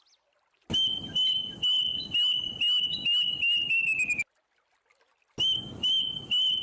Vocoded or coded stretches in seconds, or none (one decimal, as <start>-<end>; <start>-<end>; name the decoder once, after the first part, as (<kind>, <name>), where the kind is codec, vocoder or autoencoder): none